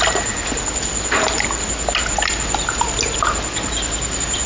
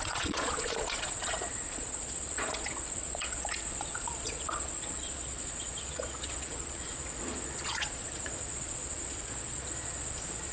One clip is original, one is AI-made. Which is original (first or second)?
first